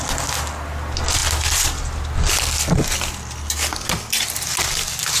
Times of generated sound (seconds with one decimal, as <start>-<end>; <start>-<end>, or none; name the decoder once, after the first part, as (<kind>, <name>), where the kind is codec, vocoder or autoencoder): none